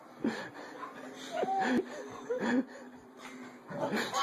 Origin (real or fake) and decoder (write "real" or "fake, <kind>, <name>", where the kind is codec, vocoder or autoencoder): real